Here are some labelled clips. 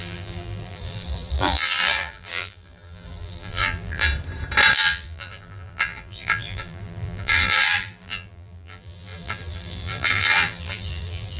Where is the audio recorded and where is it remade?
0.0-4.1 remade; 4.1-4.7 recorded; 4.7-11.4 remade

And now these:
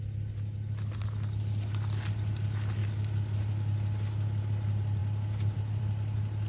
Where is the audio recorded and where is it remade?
0.0-6.5 recorded

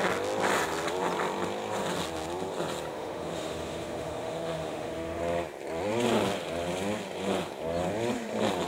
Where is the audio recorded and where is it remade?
0.0-2.9 recorded; 2.9-5.2 remade; 5.2-8.7 recorded

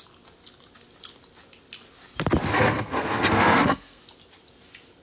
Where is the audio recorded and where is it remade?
0.0-2.5 recorded; 2.5-4.0 remade; 4.0-5.0 recorded

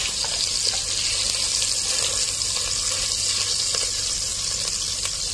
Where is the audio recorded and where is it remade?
0.0-5.3 recorded

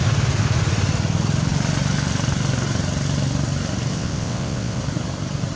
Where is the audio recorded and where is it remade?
0.0-3.9 recorded; 3.9-4.8 remade; 4.8-5.5 recorded

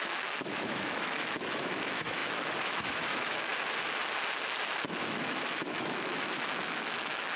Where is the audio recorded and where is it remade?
0.0-3.5 remade; 3.5-5.0 recorded; 5.0-7.4 remade

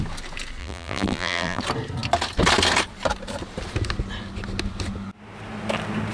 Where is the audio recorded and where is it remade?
0.0-0.6 recorded; 0.6-1.6 remade; 1.6-6.1 recorded